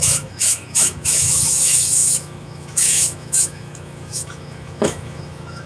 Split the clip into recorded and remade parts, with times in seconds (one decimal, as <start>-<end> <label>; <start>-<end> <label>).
0.0-5.7 remade